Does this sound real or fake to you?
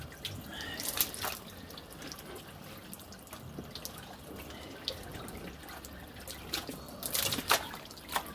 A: real